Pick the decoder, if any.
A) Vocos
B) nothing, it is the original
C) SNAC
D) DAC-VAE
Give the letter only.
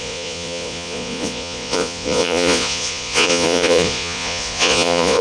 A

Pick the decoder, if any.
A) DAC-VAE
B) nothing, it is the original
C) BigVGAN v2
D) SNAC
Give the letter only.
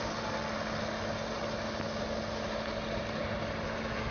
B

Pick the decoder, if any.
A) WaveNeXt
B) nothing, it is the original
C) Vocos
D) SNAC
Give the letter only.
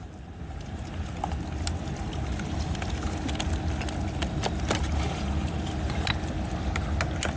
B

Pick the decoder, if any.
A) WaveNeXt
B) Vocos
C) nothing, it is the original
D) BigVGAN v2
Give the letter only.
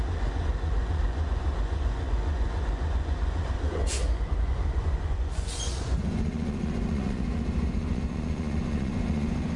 B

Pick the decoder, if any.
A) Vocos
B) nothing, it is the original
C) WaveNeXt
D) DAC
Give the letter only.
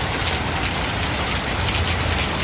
B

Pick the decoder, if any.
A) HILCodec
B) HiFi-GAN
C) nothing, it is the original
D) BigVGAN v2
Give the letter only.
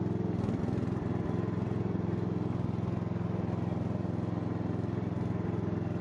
C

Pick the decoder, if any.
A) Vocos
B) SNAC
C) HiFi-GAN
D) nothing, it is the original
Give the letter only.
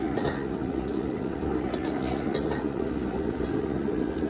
A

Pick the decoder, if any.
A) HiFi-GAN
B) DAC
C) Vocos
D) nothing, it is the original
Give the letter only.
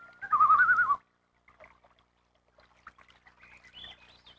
D